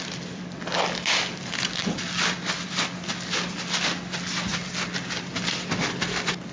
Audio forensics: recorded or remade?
recorded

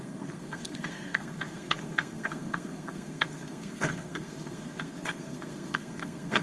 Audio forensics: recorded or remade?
remade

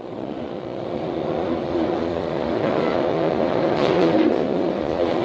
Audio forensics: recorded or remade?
remade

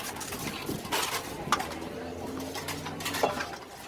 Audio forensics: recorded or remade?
recorded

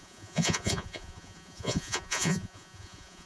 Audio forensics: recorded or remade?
remade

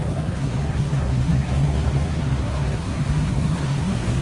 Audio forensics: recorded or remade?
remade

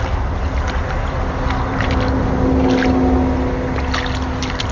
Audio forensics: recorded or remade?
recorded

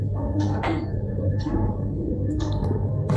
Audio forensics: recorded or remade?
remade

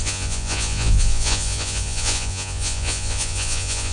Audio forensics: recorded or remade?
remade